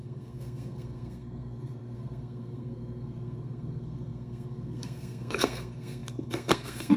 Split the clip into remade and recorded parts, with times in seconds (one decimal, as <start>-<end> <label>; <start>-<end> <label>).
0.0-7.0 remade